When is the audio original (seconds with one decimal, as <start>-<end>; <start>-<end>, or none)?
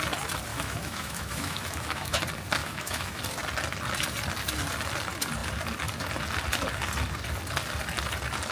0.0-0.5; 2.2-2.6; 3.2-8.5